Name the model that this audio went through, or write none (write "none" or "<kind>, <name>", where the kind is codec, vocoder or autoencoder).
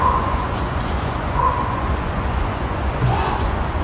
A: vocoder, Vocos